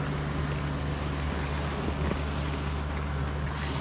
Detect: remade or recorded recorded